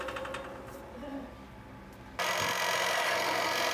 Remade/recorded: recorded